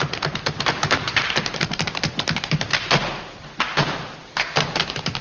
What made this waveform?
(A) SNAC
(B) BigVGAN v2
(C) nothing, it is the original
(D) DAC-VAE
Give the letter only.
C